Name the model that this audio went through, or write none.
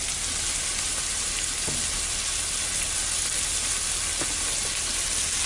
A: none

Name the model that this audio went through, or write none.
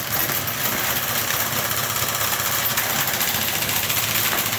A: none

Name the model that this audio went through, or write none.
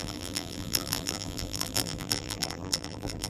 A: vocoder, BigVGAN v2